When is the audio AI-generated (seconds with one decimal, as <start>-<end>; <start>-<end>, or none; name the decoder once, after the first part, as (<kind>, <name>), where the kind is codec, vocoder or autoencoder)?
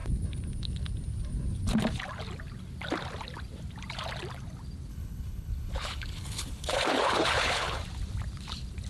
4.9-7.8 (codec, HILCodec)